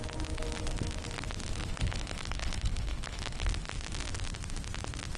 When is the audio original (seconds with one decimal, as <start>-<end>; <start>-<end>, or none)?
0.0-1.6; 3.4-5.2